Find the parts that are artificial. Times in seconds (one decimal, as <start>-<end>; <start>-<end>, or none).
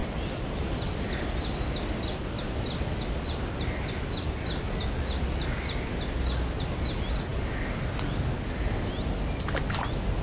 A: none